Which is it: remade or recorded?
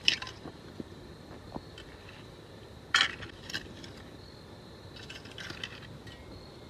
recorded